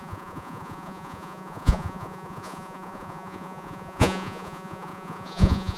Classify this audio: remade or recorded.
remade